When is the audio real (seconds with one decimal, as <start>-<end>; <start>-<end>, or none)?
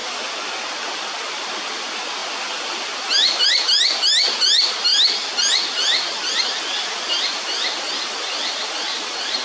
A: 0.0-9.4